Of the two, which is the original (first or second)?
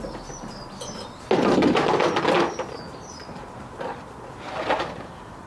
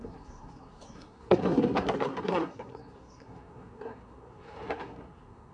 first